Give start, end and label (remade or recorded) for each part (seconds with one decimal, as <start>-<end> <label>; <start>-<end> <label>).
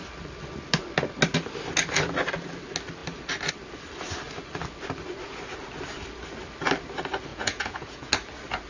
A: 0.0-7.3 recorded; 7.3-8.1 remade; 8.1-8.7 recorded